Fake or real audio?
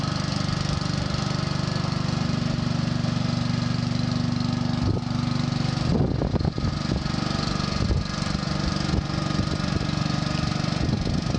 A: real